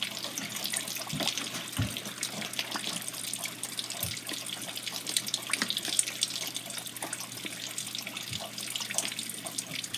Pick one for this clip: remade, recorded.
recorded